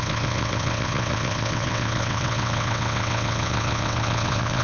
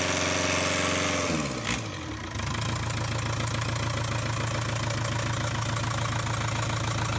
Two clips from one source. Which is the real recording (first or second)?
second